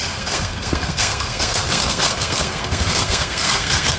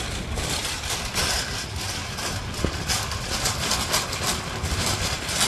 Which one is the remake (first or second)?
first